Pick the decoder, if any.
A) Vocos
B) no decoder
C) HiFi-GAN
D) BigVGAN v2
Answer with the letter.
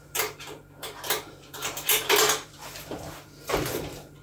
D